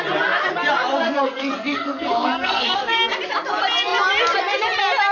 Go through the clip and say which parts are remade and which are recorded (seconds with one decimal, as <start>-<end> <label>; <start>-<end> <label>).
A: 0.0-0.9 recorded; 0.9-3.0 remade; 3.0-5.1 recorded